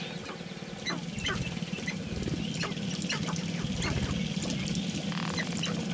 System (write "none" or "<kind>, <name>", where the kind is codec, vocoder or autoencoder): none